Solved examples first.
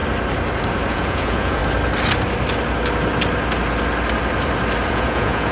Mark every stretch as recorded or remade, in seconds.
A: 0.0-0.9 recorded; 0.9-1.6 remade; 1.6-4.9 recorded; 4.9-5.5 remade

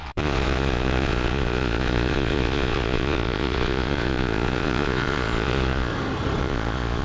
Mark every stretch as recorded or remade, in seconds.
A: 0.0-5.9 remade; 5.9-6.4 recorded; 6.4-7.0 remade

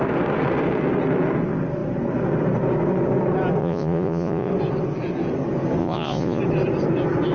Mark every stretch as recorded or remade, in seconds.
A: 0.0-3.6 recorded; 3.6-4.5 remade; 4.5-5.8 recorded; 5.8-6.4 remade; 6.4-7.3 recorded

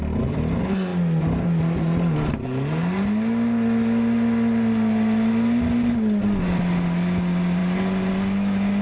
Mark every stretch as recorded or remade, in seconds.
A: 0.0-8.8 recorded

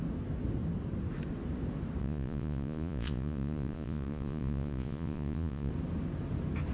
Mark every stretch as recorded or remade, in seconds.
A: 0.0-2.0 recorded; 2.0-5.7 remade; 5.7-6.7 recorded

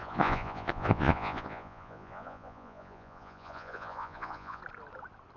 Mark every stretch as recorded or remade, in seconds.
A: 0.0-4.6 remade; 4.6-5.4 recorded

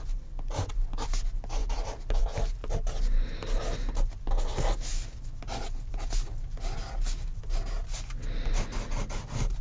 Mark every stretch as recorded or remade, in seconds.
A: 0.0-9.6 recorded